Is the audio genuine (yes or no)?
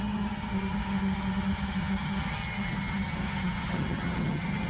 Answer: no